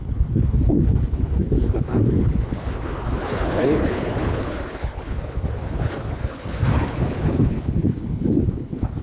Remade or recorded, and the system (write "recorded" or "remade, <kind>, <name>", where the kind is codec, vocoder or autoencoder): remade, codec, HILCodec